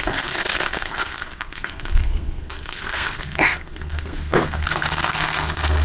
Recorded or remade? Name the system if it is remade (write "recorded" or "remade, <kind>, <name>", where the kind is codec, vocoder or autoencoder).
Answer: remade, codec, SNAC